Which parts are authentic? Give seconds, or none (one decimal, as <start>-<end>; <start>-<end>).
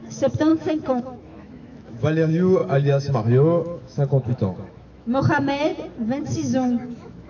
5.7-6.2